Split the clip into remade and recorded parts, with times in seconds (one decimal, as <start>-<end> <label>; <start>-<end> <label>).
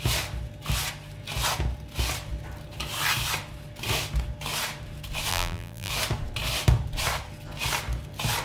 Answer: 0.0-5.3 recorded; 5.3-5.9 remade; 5.9-8.4 recorded